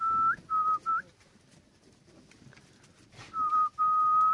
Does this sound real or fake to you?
real